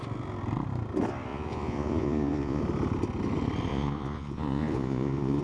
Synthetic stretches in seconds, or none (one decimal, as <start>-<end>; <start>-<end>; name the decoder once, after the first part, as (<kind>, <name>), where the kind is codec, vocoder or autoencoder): 1.3-2.6 (vocoder, Vocos); 3.7-5.4